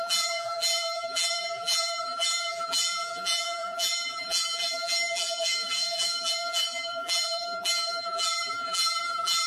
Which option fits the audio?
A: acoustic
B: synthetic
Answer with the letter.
B